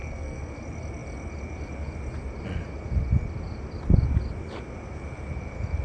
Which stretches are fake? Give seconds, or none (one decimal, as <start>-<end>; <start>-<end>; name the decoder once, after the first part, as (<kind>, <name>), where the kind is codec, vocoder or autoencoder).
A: 0.0-0.6 (codec, SNAC)